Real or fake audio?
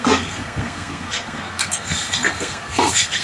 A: fake